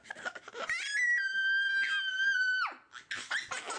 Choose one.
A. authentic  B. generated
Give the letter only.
A